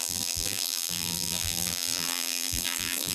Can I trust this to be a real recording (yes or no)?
no